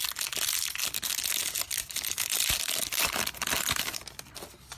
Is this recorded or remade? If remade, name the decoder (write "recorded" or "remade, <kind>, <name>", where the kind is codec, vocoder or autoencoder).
recorded